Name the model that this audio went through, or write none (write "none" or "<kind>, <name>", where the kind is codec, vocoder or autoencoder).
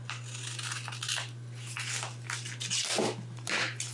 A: none